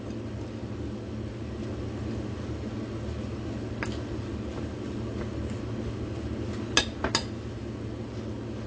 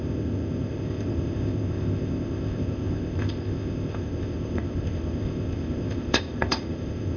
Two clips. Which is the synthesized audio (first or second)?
second